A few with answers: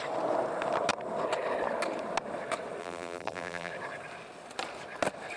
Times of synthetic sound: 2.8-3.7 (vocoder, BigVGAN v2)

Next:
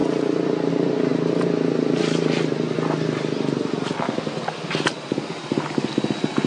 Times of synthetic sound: 0.0-0.7 (vocoder, BigVGAN v2)

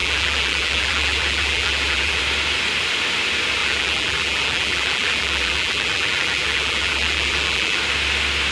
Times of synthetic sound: 0.0-2.2 (vocoder, BigVGAN v2); 3.6-7.8

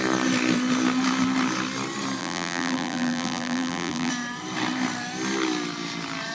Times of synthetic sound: 2.2-4.1 (vocoder, BigVGAN v2)

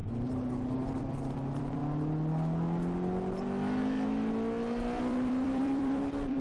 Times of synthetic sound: 1.0-1.8 (vocoder, BigVGAN v2); 5.0-6.4